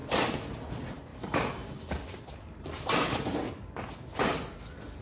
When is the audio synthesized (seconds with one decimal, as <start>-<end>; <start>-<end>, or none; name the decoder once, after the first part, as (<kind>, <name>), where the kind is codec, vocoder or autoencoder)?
none